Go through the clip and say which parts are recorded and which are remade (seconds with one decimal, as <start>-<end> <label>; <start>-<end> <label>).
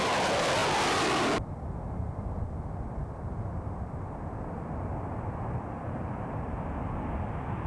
0.0-7.7 recorded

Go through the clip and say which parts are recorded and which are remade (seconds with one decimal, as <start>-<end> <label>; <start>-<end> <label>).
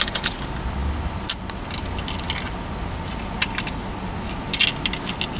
0.0-5.4 recorded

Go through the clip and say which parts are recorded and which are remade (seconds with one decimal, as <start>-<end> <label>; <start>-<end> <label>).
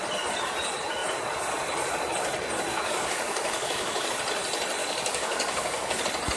0.0-2.7 recorded; 2.7-4.1 remade; 4.1-4.8 recorded; 4.8-6.0 remade; 6.0-6.4 recorded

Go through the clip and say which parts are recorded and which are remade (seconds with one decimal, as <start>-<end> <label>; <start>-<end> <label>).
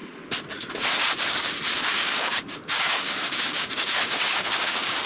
0.0-1.9 recorded; 1.9-5.1 remade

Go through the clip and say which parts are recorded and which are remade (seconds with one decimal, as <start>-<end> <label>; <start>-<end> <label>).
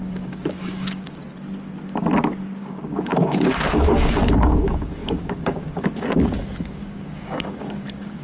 0.0-1.2 remade; 1.2-2.6 recorded; 2.6-8.2 remade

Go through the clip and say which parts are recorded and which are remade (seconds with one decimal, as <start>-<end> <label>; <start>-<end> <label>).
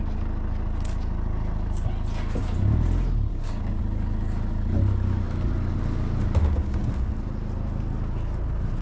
0.0-3.3 recorded; 3.3-3.8 remade; 3.8-6.4 recorded; 6.4-7.1 remade; 7.1-8.8 recorded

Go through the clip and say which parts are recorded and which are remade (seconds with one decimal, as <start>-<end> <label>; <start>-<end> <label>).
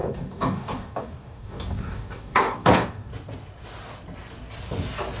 0.0-3.1 remade; 3.1-5.2 recorded